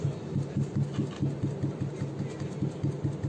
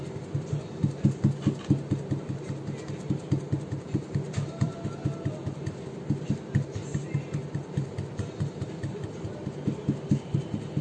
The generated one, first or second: second